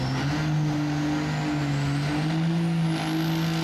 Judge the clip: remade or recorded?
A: recorded